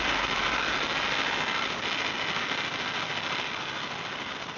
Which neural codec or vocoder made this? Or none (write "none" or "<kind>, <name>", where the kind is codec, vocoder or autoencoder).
none